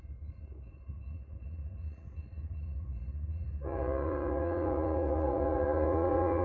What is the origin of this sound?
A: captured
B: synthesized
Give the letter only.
B